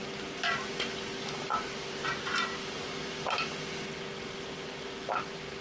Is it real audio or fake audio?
real